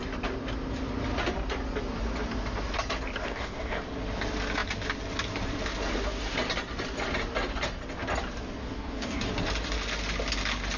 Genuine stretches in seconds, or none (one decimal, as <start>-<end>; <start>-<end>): 0.0-3.2; 3.8-8.6; 9.3-10.8